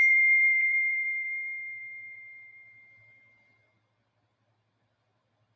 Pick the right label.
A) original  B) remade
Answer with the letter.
B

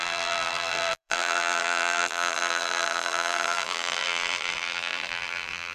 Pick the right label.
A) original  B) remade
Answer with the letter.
B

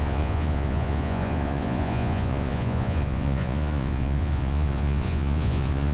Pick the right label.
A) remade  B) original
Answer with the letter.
A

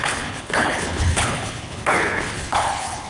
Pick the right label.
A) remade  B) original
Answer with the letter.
A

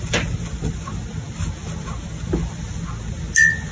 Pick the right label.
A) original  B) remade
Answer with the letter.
A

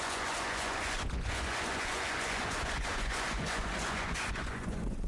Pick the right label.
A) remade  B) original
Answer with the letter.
A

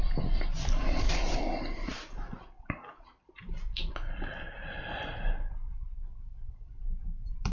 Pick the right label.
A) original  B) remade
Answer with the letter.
B